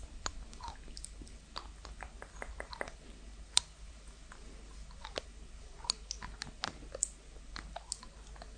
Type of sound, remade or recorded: recorded